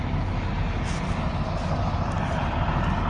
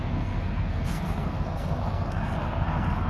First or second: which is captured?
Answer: first